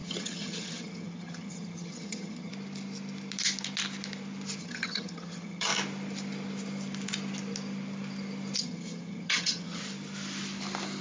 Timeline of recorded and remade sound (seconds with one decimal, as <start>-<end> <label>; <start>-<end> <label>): 0.0-2.5 remade; 2.5-4.6 recorded; 4.6-5.7 remade; 5.7-8.6 recorded; 8.6-9.8 remade; 9.8-11.0 recorded

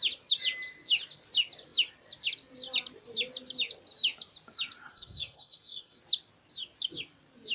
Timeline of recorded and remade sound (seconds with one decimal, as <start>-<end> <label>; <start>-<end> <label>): 0.0-4.9 recorded; 4.9-6.0 remade; 6.0-7.5 recorded

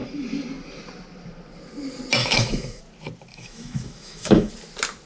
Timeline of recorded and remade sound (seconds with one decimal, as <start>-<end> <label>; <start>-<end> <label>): 0.0-2.2 recorded; 2.2-2.8 remade; 2.8-3.3 recorded; 3.3-4.5 remade; 4.5-5.1 recorded

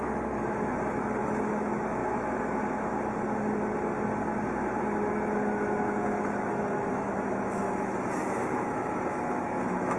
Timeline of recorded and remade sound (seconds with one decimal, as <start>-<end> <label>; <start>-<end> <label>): 0.0-2.0 remade; 2.0-5.1 recorded; 5.1-10.0 remade

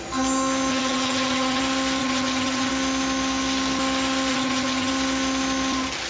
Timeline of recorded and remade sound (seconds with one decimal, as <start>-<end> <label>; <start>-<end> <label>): 0.0-0.7 recorded; 0.7-1.6 remade; 1.6-2.0 recorded; 2.0-2.7 remade; 2.7-4.3 recorded; 4.3-4.9 remade; 4.9-6.1 recorded

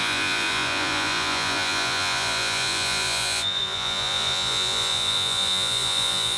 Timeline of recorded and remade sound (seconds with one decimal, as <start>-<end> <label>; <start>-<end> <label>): 0.0-6.4 remade